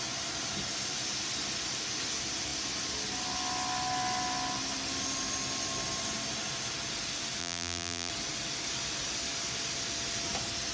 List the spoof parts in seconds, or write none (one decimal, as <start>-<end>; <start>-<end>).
7.4-8.1